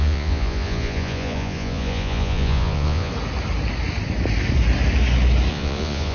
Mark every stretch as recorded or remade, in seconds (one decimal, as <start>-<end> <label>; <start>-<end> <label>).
0.0-3.1 remade; 3.1-5.5 recorded; 5.5-6.1 remade